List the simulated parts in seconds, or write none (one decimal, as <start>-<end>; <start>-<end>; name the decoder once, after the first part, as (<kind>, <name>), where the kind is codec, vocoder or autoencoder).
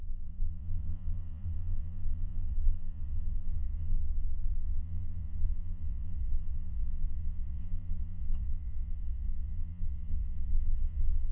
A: 0.0-11.3 (vocoder, Vocos)